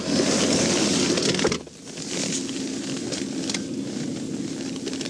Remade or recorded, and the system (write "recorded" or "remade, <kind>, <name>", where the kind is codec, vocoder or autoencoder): recorded